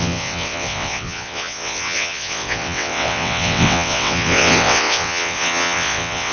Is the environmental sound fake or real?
fake